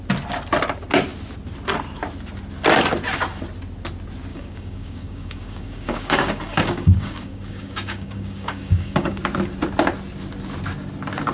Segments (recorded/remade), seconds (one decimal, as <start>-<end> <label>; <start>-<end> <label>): 0.0-4.3 recorded; 4.3-9.2 remade; 9.2-11.3 recorded